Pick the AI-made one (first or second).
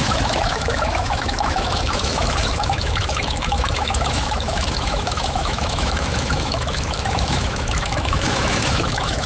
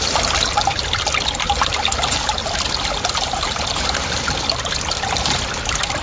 first